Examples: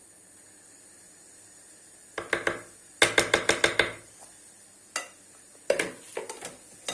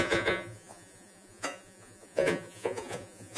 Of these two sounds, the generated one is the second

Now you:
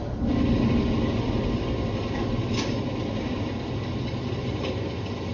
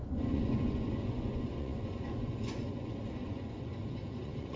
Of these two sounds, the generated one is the second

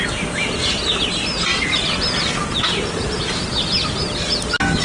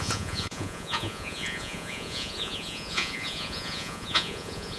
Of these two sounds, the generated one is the second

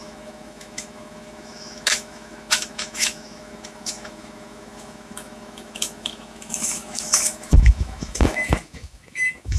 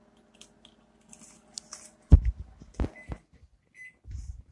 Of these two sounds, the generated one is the first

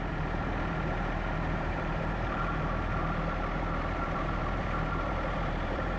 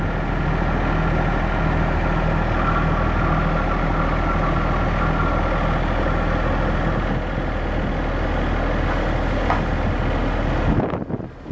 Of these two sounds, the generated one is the first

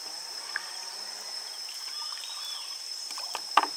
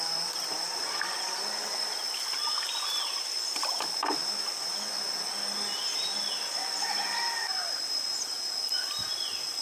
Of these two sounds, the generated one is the first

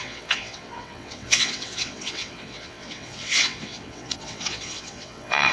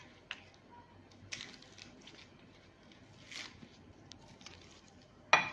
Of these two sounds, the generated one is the first